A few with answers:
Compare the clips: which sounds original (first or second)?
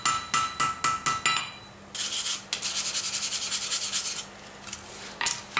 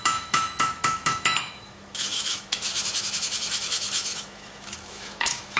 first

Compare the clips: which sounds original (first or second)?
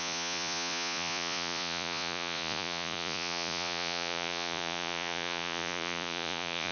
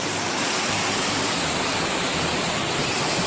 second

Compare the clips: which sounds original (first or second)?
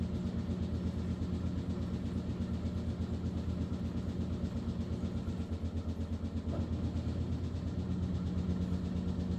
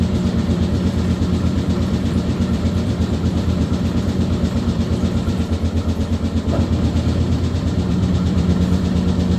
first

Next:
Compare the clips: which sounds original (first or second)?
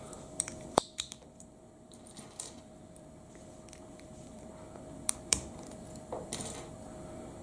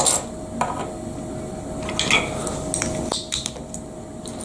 second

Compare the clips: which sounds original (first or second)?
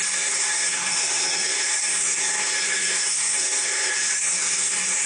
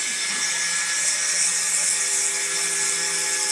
second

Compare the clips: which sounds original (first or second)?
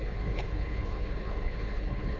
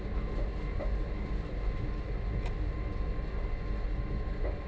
second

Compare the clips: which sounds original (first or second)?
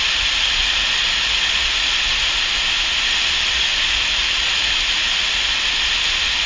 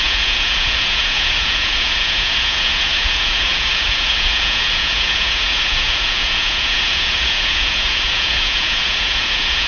first